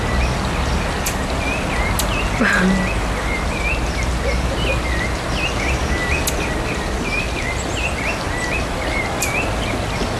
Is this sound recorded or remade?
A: recorded